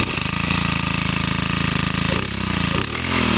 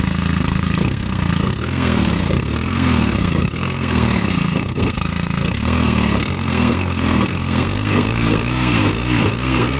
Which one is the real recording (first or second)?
first